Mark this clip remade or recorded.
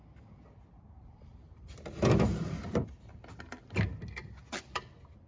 recorded